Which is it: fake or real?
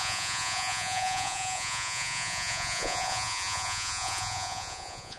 fake